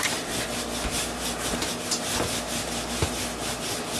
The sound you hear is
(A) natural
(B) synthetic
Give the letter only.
A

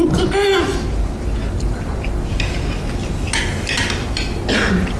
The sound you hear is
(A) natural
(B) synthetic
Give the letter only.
A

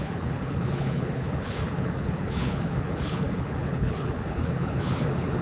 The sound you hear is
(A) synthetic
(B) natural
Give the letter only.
A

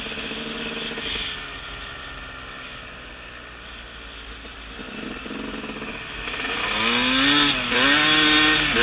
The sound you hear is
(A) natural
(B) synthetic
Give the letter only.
A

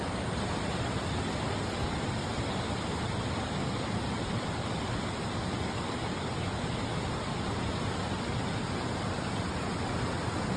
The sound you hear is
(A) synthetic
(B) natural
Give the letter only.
B